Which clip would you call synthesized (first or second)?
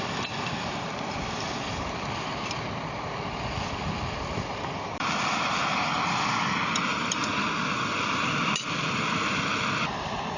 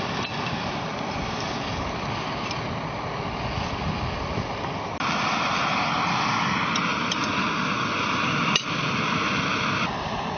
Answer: first